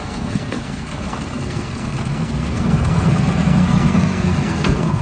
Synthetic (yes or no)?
yes